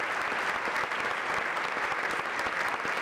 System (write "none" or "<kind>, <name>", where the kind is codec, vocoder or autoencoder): none